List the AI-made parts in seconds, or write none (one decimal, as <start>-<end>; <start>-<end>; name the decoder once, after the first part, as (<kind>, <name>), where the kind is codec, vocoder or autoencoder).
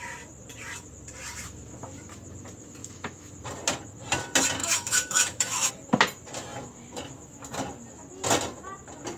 2.8-3.3 (autoencoder, DAC-VAE); 4.6-5.7